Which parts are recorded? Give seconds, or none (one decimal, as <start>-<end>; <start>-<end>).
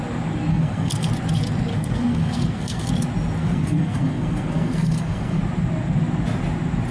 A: 0.0-0.5; 1.1-1.7; 2.9-3.4; 5.4-6.9